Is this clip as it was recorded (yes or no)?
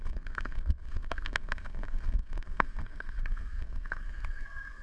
no